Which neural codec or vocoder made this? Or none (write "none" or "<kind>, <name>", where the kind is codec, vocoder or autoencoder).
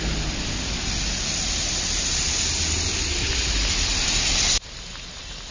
none